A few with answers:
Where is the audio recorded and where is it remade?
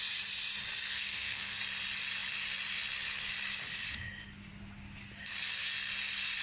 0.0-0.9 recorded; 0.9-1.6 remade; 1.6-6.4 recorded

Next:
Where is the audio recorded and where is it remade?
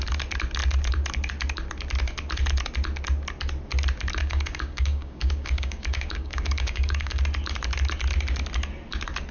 0.0-4.2 recorded; 4.2-7.2 remade; 7.2-9.3 recorded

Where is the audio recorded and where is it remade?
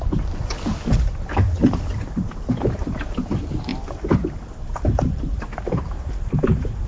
0.0-1.6 recorded; 1.6-3.3 remade; 3.3-3.7 recorded; 3.7-6.1 remade; 6.1-6.9 recorded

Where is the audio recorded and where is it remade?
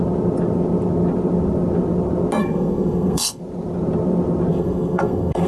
0.0-2.4 recorded; 2.4-3.4 remade; 3.4-4.5 recorded; 4.5-5.5 remade